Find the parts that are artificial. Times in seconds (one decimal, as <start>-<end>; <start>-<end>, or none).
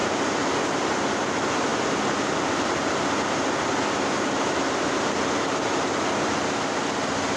none